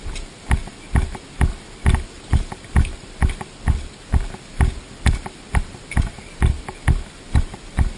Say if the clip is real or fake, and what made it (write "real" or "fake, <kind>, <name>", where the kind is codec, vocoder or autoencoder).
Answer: real